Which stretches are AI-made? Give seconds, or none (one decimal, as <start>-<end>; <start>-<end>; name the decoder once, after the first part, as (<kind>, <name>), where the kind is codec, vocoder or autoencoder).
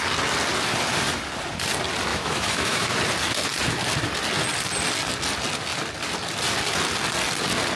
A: 2.1-3.0 (autoencoder, DAC-VAE)